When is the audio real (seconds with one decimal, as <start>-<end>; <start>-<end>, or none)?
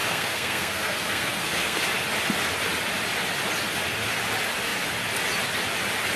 1.8-6.2